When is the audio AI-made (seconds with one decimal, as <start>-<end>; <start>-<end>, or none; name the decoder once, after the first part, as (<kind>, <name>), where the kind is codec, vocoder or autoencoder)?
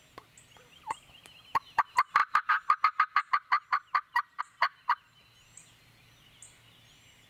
none